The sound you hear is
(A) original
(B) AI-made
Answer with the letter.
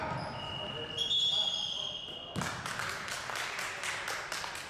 A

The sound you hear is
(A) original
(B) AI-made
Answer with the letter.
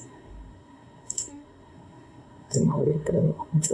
B